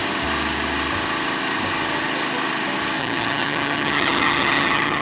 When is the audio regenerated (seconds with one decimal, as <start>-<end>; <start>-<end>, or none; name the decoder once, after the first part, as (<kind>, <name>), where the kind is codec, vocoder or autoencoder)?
3.0-5.0 (vocoder, HiFi-GAN)